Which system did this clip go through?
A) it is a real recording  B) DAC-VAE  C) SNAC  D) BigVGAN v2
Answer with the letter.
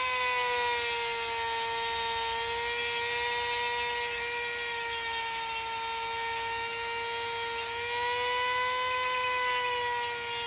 A